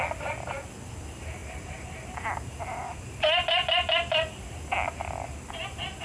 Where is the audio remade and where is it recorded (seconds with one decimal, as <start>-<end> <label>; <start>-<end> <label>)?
0.0-6.0 recorded